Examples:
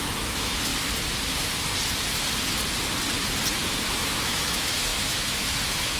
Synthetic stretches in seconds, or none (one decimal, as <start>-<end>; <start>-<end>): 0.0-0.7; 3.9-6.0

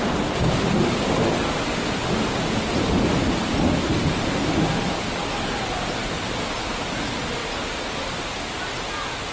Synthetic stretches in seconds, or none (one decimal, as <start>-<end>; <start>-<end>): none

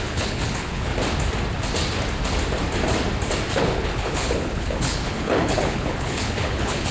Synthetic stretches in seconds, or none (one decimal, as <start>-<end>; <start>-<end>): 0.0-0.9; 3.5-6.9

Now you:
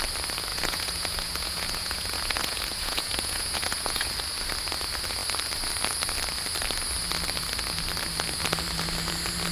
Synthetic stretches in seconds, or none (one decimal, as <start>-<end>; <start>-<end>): 0.5-4.1